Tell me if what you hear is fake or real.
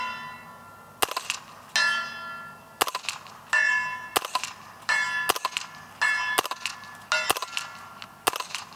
real